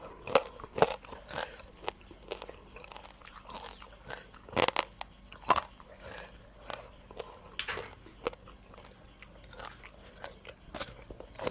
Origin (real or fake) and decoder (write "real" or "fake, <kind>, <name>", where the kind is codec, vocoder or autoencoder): real